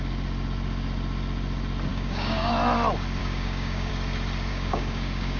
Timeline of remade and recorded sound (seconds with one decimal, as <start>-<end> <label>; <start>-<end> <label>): 0.0-1.9 recorded; 1.9-2.5 remade; 2.5-3.2 recorded; 3.2-3.9 remade; 3.9-4.5 recorded; 4.5-5.4 remade